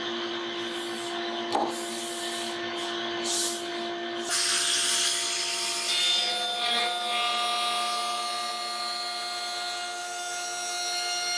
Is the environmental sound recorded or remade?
recorded